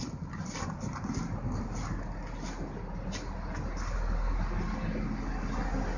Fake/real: real